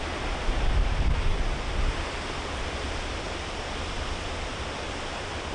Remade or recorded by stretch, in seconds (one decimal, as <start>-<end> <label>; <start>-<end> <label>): 0.0-5.5 recorded